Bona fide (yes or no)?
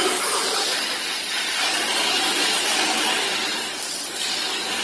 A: yes